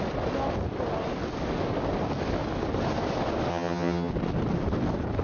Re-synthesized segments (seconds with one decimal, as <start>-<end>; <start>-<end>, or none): 3.5-4.1